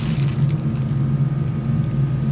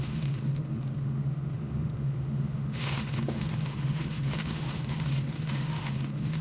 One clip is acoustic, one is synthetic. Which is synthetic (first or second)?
second